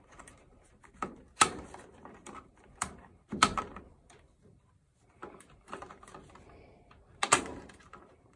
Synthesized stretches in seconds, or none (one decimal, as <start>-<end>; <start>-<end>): 0.0-8.4